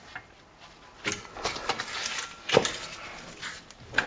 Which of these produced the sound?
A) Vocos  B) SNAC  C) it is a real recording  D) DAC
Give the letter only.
C